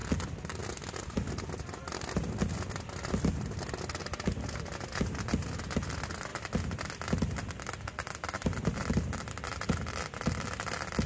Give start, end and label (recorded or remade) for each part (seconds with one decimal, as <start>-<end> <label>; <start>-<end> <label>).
0.0-11.1 recorded